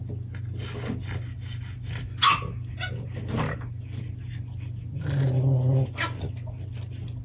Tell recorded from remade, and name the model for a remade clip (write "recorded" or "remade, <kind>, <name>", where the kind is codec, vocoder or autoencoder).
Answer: recorded